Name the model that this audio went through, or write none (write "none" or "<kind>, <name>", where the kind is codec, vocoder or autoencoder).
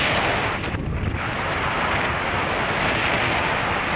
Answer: none